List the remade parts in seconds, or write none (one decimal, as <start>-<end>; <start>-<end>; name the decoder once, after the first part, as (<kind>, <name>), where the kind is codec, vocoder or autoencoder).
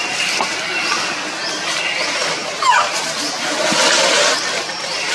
none